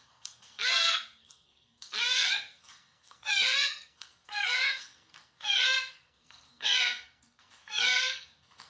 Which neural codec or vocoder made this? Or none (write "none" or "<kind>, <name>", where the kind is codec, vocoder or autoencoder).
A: codec, SNAC